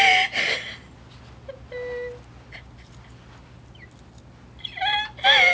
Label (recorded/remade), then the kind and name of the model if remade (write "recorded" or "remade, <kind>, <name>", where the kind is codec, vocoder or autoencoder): recorded